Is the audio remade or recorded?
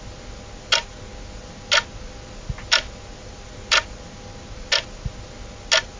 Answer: recorded